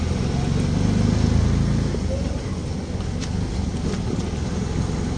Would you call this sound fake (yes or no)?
no